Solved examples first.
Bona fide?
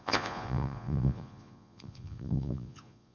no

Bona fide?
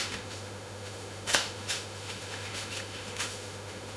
no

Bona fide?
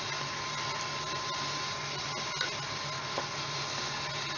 yes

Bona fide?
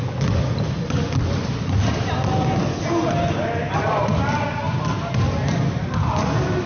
yes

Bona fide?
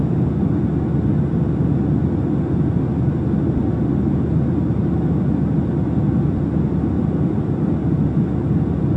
yes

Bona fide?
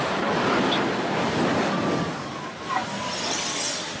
yes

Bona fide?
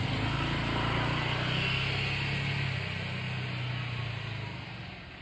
yes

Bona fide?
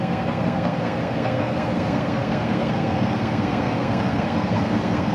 no